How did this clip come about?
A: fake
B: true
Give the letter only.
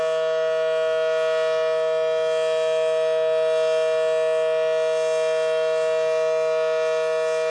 B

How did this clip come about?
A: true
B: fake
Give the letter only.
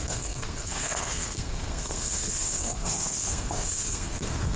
B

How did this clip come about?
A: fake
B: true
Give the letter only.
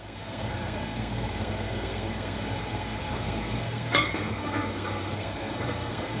A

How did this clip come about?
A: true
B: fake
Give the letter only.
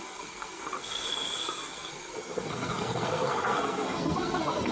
B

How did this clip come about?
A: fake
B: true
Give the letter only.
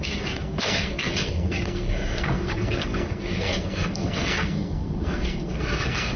A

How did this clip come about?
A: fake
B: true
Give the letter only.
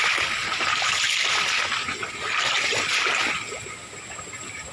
B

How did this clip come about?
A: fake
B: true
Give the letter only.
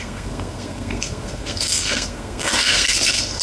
A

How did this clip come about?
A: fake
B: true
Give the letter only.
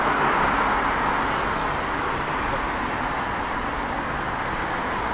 B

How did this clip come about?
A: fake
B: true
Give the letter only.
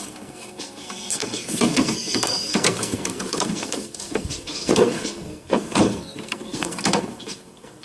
A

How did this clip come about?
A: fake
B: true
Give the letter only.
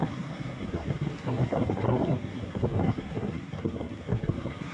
A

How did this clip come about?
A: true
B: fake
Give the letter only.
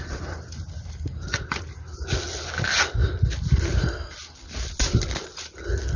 A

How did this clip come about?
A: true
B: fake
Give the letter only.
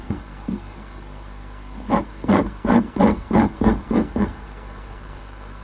B